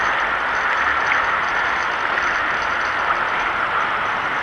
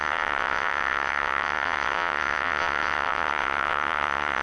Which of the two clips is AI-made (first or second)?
second